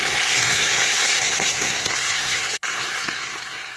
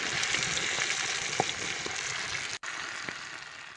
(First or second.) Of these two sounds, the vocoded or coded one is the first